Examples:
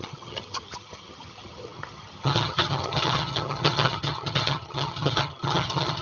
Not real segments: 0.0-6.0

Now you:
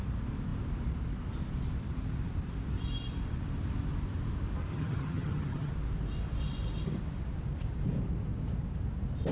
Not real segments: 4.7-5.7

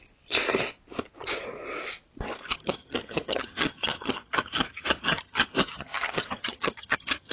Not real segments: 2.5-7.3

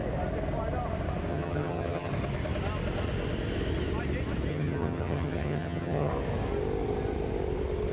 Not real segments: 1.3-2.1; 4.5-6.1

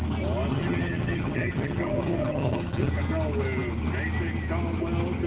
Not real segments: 0.5-2.9